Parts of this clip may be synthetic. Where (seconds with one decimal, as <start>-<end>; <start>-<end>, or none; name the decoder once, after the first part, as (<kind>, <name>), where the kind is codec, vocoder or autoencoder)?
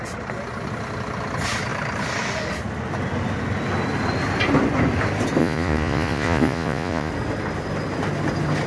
5.4-7.1 (vocoder, Vocos)